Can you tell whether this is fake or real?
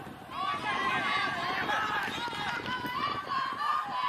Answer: real